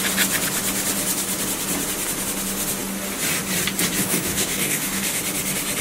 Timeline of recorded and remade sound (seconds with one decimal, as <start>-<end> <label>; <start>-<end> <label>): 0.0-4.0 recorded; 4.0-5.2 remade; 5.2-5.8 recorded